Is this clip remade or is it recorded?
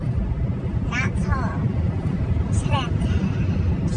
recorded